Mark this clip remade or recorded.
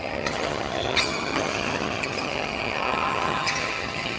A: remade